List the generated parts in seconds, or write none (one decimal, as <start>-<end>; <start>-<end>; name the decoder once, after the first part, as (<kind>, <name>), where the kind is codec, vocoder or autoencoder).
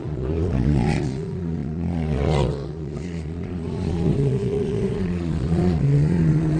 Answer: 0.0-6.6 (vocoder, Vocos)